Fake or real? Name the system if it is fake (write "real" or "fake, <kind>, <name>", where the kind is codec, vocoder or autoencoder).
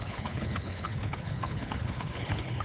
fake, codec, HILCodec